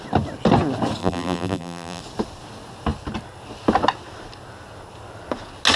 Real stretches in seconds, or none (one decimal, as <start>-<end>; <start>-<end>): 0.0-1.0; 2.0-5.8